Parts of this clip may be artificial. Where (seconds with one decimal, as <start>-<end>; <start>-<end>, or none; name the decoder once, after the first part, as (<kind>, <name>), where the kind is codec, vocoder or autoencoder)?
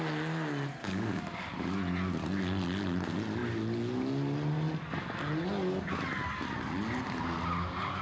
0.8-1.8 (codec, DAC)